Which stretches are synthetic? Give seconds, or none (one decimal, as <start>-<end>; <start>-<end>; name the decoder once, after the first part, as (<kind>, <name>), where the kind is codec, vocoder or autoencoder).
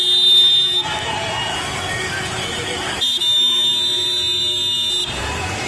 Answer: 1.5-4.9 (autoencoder, DAC-VAE)